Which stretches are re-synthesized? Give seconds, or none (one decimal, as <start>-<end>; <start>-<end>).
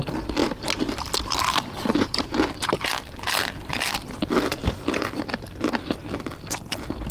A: 0.4-3.5; 4.5-5.3